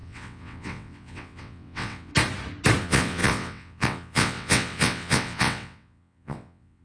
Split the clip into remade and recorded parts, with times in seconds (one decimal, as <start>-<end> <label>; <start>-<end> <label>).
0.0-2.1 remade; 2.1-2.8 recorded; 2.8-6.8 remade